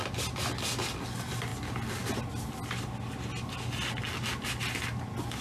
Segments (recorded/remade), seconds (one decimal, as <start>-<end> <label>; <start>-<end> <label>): 0.0-5.4 recorded